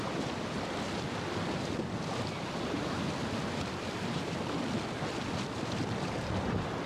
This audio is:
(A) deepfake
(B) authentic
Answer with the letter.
B